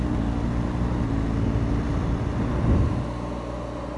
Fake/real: real